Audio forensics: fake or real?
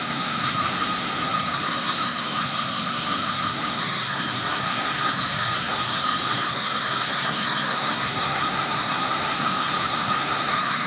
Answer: fake